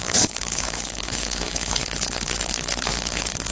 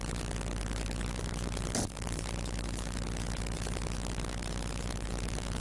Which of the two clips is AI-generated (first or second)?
first